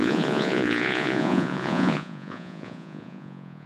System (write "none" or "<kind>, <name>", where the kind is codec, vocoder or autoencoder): vocoder, Vocos